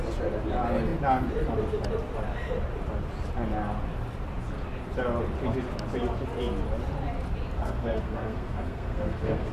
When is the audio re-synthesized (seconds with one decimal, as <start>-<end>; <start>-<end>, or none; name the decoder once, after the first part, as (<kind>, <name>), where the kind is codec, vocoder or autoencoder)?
7.6-9.5 (codec, SNAC)